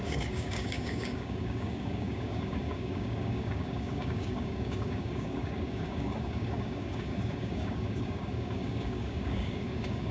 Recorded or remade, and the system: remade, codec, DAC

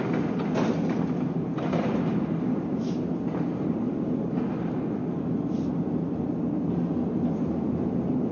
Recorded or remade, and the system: recorded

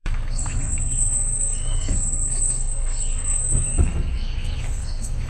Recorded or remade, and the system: remade, codec, SNAC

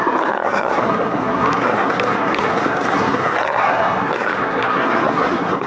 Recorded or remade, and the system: remade, codec, SNAC